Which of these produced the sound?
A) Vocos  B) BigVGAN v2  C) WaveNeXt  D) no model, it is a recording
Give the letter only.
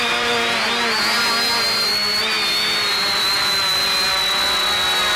D